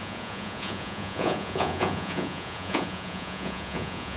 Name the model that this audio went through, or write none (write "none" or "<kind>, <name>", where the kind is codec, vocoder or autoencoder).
vocoder, Vocos